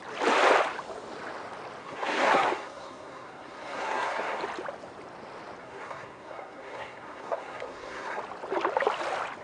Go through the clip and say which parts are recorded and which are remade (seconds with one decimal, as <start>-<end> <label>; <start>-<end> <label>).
0.0-1.8 recorded; 1.8-4.4 remade; 4.4-5.6 recorded; 5.6-8.2 remade; 8.2-9.4 recorded